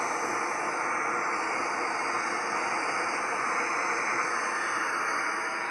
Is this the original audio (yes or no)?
yes